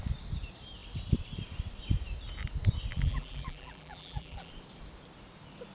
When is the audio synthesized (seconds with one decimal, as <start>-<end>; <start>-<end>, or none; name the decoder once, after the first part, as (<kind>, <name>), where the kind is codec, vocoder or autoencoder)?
2.9-4.5 (vocoder, BigVGAN v2)